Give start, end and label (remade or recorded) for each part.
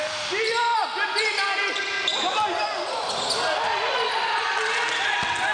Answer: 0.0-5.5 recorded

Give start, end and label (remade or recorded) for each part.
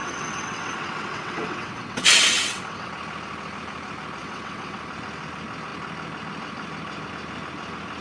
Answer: 0.0-2.9 remade; 2.9-4.2 recorded; 4.2-4.8 remade; 4.8-8.0 recorded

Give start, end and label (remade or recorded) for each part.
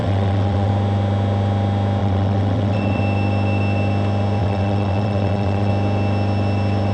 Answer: 0.0-0.7 remade; 0.7-2.0 recorded; 2.0-3.0 remade; 3.0-4.4 recorded; 4.4-5.7 remade; 5.7-6.9 recorded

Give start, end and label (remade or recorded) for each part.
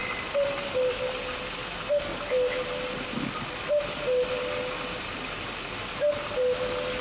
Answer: 0.0-7.0 recorded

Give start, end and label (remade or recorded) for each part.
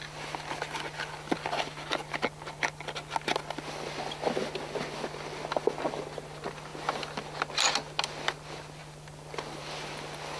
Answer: 0.0-10.4 recorded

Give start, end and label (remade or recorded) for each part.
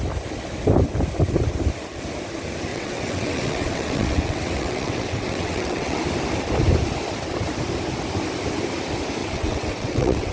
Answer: 0.0-2.7 recorded; 2.7-6.0 remade; 6.0-9.2 recorded; 9.2-10.3 remade